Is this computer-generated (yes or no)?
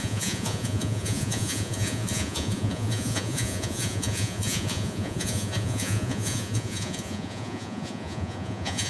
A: yes